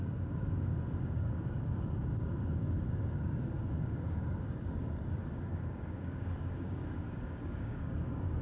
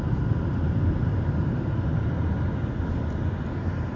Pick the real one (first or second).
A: second